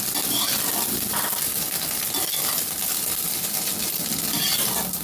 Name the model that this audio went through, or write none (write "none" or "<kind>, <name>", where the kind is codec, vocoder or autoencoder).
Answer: none